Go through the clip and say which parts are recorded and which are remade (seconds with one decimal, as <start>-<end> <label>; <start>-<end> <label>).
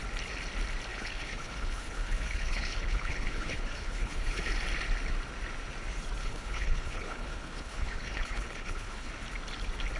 0.0-0.9 recorded; 0.9-4.4 remade; 4.4-6.2 recorded; 6.2-9.1 remade; 9.1-10.0 recorded